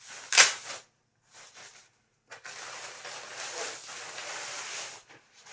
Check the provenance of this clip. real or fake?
real